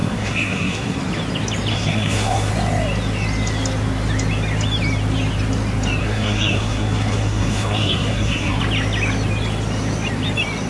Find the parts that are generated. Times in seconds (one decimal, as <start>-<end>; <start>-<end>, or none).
0.0-1.0; 1.7-2.5; 6.0-8.6